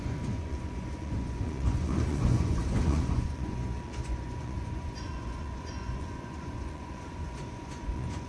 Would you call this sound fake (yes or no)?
yes